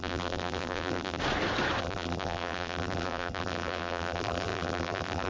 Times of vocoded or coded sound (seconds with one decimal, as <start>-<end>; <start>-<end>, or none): 0.0-1.2; 1.8-5.3